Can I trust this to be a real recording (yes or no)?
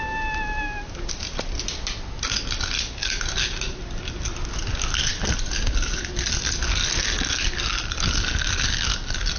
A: yes